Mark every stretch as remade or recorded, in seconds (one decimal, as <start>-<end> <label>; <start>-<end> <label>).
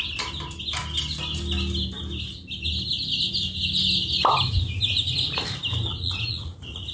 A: 0.0-5.9 recorded; 5.9-6.9 remade